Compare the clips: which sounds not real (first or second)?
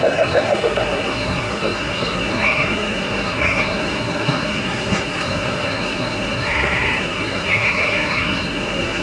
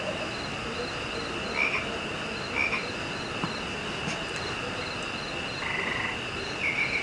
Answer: first